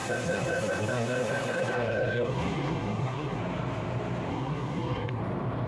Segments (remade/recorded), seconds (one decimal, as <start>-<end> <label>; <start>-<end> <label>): 0.0-3.4 remade; 3.4-4.3 recorded; 4.3-5.2 remade; 5.2-5.7 recorded